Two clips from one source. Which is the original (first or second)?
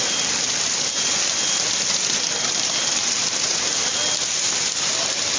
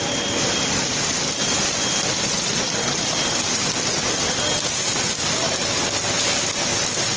second